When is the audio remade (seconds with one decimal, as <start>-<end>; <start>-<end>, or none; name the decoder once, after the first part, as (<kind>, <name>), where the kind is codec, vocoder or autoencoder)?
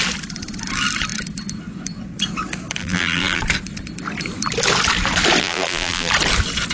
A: 2.8-3.4 (vocoder, BigVGAN v2); 5.4-6.1